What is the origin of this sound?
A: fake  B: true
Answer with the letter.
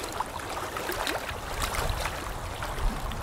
B